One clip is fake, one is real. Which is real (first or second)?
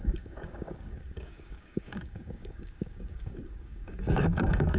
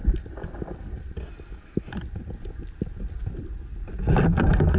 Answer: second